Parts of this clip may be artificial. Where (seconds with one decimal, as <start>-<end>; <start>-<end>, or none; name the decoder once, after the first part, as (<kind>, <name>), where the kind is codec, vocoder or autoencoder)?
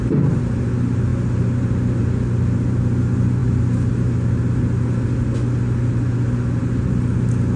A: none